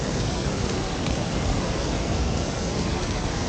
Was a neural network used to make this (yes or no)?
yes